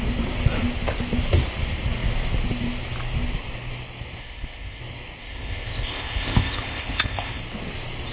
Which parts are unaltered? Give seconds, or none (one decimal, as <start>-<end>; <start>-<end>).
0.0-4.2; 4.8-5.2; 7.4-8.1